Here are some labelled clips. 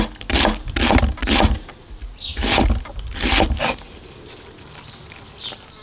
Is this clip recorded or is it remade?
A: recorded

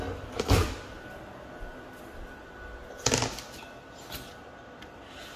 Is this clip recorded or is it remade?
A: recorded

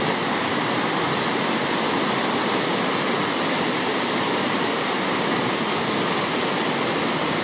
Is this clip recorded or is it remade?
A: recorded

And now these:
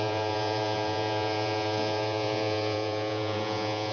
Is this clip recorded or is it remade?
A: remade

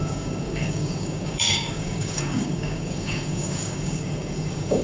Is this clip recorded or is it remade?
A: remade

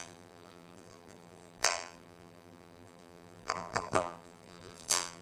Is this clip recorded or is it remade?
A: remade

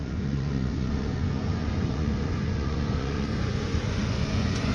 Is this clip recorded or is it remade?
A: remade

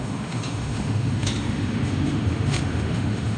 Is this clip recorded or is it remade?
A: remade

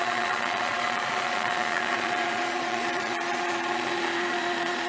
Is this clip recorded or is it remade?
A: remade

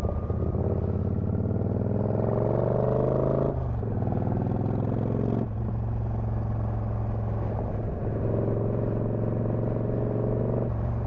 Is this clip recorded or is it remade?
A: recorded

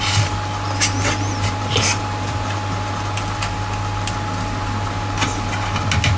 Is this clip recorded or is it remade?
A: recorded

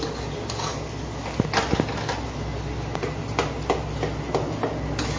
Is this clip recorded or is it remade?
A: recorded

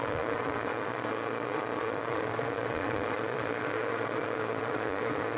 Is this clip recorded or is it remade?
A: remade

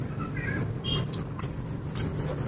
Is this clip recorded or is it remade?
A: recorded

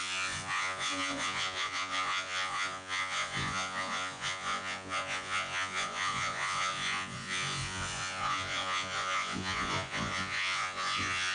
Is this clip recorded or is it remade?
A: remade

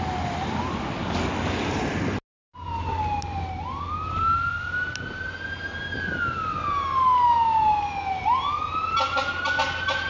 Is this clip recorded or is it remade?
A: recorded